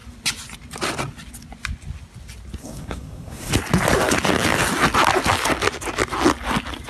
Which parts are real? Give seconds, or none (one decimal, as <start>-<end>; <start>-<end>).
0.0-2.6; 3.5-6.9